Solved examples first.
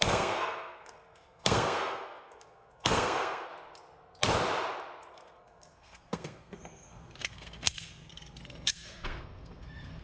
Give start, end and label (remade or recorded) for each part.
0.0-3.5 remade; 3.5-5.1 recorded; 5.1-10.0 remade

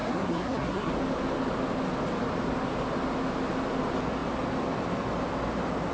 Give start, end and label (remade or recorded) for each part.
0.0-0.9 remade; 0.9-5.9 recorded

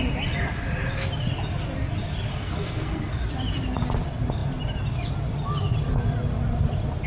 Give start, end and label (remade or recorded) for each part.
0.0-2.3 recorded; 2.3-3.1 remade; 3.1-7.1 recorded